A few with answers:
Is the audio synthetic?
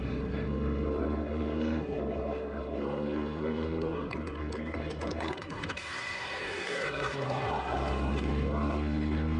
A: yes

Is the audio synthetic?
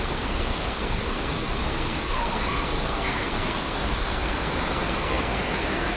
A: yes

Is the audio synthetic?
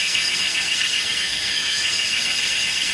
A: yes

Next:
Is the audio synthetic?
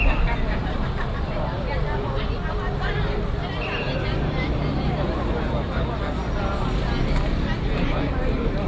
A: no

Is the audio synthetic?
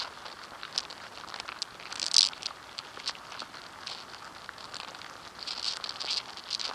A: no